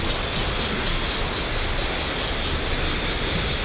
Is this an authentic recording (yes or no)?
yes